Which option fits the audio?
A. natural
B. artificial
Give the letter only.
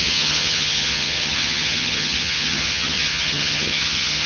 B